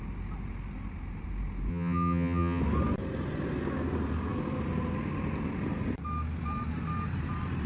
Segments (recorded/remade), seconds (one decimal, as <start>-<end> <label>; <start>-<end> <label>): 0.0-1.7 recorded; 1.7-2.6 remade; 2.6-7.7 recorded